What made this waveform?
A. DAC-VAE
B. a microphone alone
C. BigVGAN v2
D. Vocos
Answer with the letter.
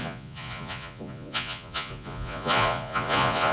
D